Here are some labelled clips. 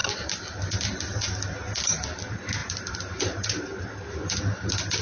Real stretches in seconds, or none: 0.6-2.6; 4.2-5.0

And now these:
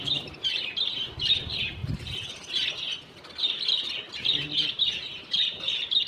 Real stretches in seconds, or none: 1.8-4.8

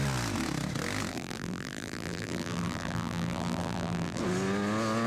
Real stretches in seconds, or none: 0.0-1.1; 4.2-5.1

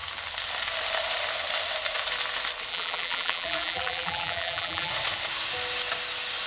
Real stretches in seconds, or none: 0.0-2.7; 4.9-6.5

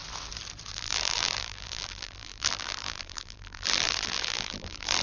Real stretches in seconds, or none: 0.0-0.7

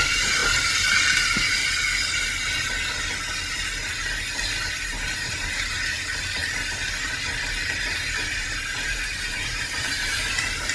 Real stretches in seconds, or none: 0.4-4.7; 6.4-7.7

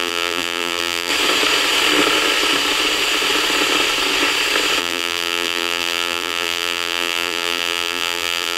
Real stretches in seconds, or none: 1.1-4.8

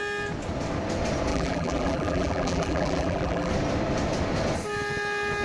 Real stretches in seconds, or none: 0.0-1.3; 3.5-5.4